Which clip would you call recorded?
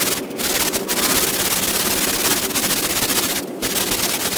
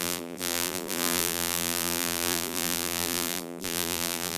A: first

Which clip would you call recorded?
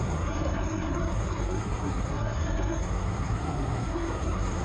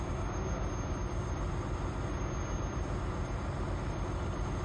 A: second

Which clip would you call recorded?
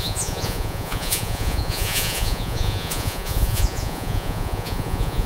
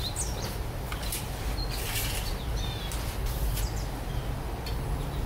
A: second